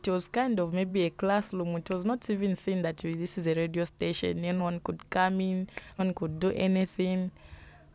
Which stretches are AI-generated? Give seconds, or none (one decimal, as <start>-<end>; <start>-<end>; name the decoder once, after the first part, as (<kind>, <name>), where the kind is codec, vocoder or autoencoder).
none